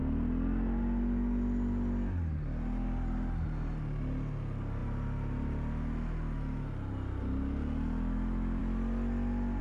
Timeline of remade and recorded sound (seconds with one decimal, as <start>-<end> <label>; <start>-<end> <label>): 0.0-9.6 recorded